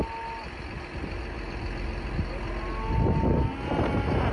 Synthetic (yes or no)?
no